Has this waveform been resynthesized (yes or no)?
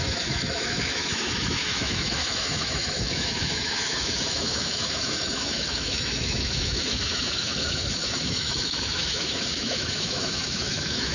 yes